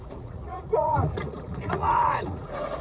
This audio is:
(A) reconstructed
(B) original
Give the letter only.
A